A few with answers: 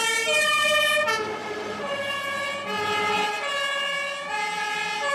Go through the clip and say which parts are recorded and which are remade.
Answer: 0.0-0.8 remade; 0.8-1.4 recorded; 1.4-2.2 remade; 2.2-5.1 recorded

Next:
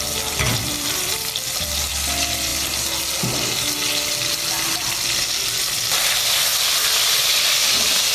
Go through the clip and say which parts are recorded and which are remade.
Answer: 0.0-0.5 recorded; 0.5-1.9 remade; 1.9-8.1 recorded

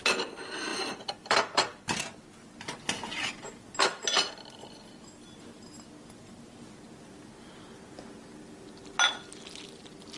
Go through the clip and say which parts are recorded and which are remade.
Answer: 0.0-0.7 recorded; 0.7-2.0 remade; 2.0-10.2 recorded

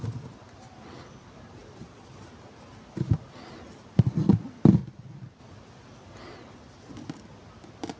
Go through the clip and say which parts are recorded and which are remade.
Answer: 0.0-8.0 recorded

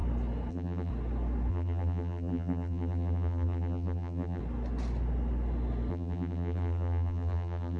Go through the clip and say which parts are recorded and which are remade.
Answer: 0.0-0.5 recorded; 0.5-0.9 remade; 0.9-1.5 recorded; 1.5-4.4 remade; 4.4-5.9 recorded; 5.9-7.8 remade